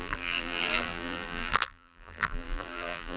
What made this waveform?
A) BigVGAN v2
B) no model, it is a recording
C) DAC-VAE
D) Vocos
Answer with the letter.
A